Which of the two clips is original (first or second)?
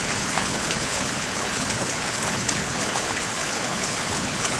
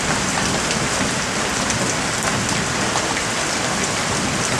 second